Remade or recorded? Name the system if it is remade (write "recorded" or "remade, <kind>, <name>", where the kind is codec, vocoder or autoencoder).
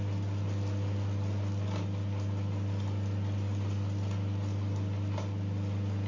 recorded